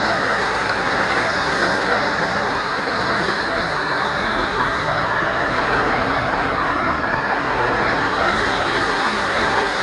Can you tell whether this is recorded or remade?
remade